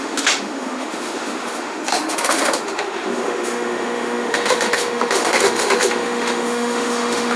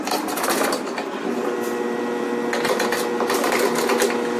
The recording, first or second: second